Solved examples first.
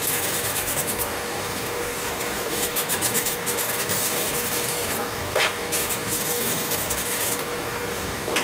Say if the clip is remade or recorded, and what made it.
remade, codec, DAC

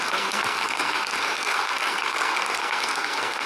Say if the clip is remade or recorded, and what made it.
remade, codec, SNAC